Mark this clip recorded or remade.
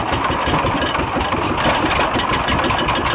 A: recorded